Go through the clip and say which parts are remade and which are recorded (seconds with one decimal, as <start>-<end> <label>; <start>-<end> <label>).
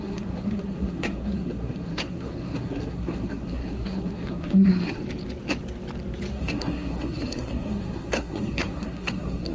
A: 0.0-5.0 remade; 5.0-6.3 recorded; 6.3-9.5 remade